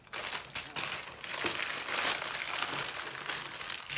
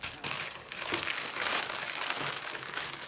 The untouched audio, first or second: first